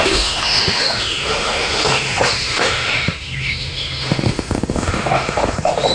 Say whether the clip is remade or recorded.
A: remade